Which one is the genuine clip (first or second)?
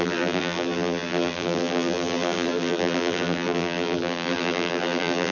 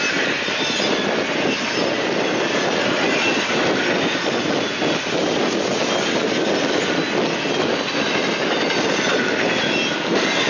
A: second